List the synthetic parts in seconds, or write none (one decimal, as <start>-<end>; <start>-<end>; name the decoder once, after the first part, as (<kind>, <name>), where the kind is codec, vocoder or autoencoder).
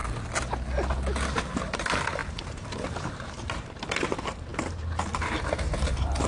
1.7-6.3 (vocoder, BigVGAN v2)